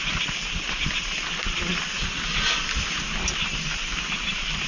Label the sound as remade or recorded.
recorded